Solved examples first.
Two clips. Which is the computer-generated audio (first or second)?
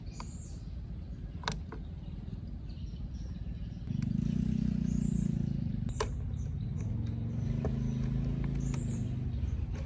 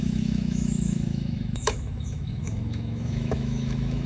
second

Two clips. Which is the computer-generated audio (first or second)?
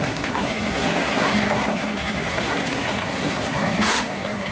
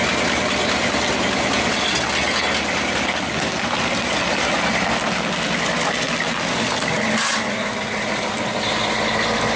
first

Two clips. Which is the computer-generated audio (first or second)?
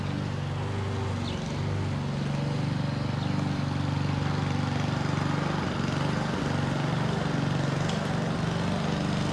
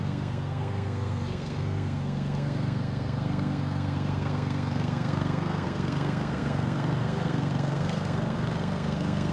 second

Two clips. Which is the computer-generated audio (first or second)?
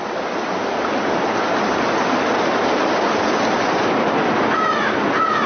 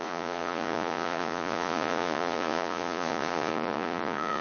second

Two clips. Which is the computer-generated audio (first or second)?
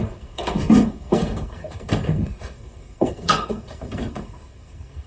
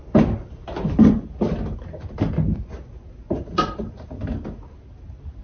first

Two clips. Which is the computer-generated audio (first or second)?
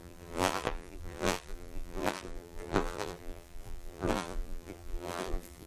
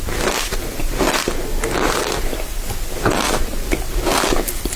first